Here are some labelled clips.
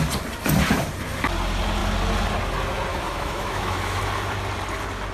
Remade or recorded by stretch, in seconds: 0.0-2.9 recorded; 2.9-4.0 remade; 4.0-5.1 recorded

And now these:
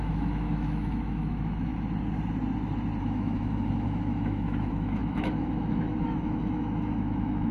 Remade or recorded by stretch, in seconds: 0.0-1.7 remade; 1.7-3.0 recorded; 3.0-7.5 remade

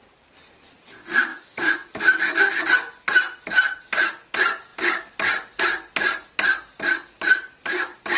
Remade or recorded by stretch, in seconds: 0.0-1.3 recorded; 1.3-2.5 remade; 2.5-8.2 recorded